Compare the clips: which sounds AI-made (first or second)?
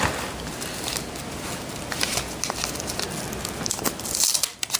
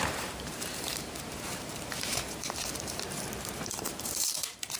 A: second